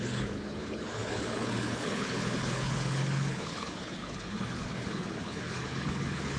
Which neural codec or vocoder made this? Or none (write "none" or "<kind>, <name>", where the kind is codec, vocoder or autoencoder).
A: codec, HILCodec